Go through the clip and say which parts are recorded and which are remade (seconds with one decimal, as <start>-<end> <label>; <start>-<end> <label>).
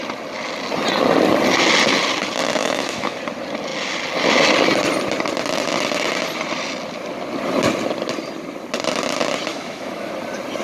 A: 0.0-2.6 recorded; 2.6-3.2 remade; 3.2-9.5 recorded; 9.5-10.1 remade; 10.1-10.6 recorded